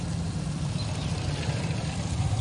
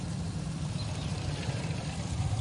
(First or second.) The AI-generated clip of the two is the second